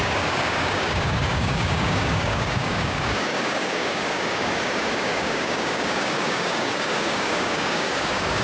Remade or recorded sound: remade